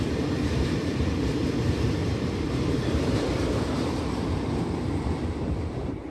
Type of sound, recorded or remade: remade